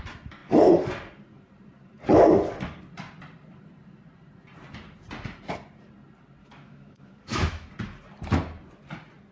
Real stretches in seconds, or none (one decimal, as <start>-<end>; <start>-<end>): 0.0-6.4; 7.7-9.3